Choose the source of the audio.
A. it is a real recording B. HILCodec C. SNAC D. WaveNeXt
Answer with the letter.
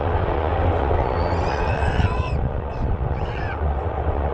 D